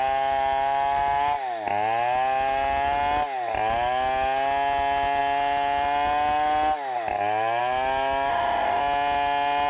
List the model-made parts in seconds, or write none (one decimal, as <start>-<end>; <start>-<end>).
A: 8.3-8.8